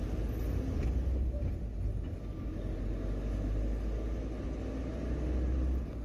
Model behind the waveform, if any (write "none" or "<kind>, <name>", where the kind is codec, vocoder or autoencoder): none